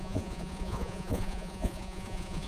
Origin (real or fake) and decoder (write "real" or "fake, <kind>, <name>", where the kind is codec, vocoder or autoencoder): fake, vocoder, Vocos